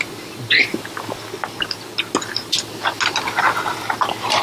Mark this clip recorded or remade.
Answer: recorded